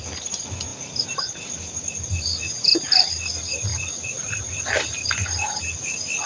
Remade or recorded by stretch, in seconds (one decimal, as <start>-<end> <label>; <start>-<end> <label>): 0.0-6.3 recorded